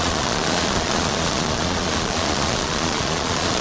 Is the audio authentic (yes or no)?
no